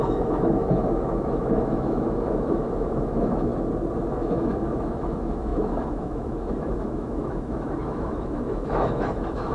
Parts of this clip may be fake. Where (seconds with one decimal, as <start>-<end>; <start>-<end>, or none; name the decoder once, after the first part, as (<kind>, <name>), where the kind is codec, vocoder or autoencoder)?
0.0-3.5 (autoencoder, DAC-VAE); 4.1-9.5